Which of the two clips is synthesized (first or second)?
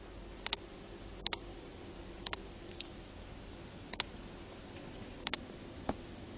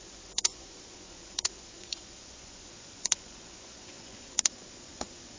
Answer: second